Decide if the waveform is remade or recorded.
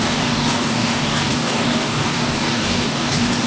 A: remade